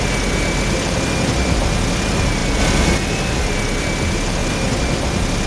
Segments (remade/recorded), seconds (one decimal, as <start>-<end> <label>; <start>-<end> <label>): 0.0-4.4 recorded; 4.4-4.9 remade; 4.9-5.5 recorded